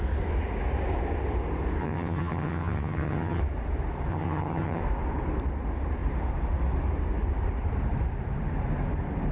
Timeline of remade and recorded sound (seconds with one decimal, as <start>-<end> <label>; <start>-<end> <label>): 0.0-1.8 recorded; 1.8-3.4 remade; 3.4-4.1 recorded; 4.1-4.8 remade; 4.8-9.3 recorded